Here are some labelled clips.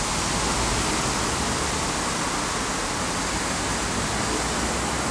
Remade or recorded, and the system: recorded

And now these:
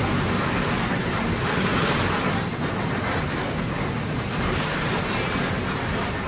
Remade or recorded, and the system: recorded